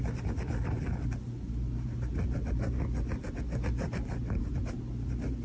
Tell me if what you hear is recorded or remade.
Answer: recorded